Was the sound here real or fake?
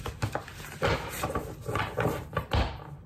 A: real